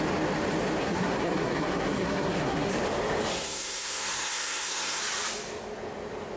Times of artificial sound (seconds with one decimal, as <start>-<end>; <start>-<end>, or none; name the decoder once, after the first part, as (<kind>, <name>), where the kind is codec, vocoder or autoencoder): 0.8-2.7 (codec, SNAC); 3.3-5.0